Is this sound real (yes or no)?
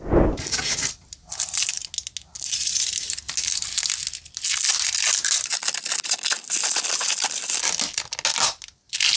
yes